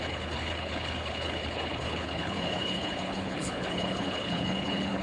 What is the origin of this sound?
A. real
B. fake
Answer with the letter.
B